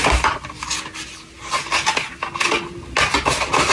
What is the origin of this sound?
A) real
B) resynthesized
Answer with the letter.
A